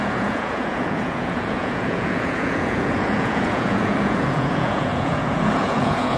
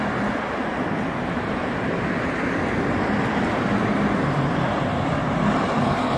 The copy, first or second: first